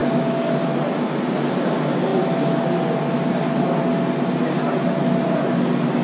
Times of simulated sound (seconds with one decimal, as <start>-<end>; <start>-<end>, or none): none